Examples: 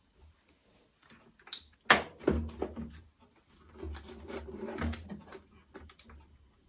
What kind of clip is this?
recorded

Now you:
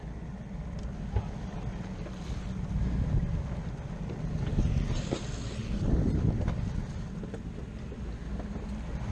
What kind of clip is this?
recorded